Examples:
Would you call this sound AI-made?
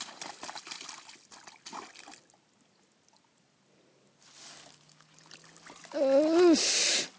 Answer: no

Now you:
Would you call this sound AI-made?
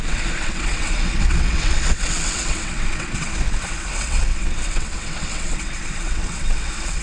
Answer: yes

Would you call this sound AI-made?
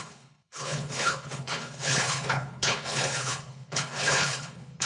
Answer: yes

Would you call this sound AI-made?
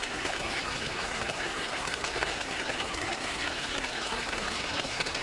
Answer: yes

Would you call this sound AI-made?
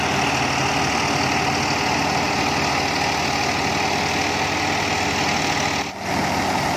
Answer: no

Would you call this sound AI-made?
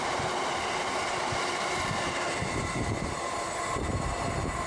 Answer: no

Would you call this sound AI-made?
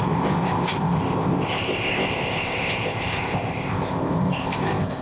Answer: yes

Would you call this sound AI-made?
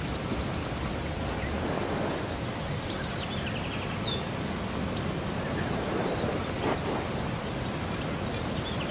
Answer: no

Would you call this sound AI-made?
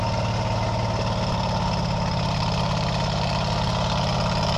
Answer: no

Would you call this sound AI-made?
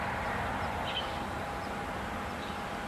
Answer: no